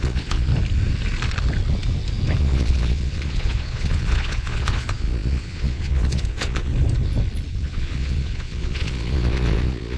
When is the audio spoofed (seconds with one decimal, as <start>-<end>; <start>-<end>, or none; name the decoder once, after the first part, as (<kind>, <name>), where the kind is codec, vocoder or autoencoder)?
0.0-0.5 (vocoder, Vocos); 2.4-6.7; 7.5-10.0